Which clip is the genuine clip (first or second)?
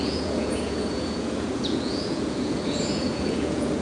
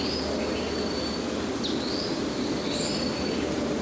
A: second